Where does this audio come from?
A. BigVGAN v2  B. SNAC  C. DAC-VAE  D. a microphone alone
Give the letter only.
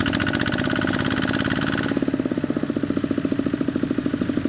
D